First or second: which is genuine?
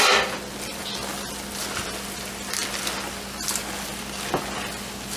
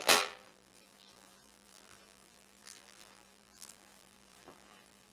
first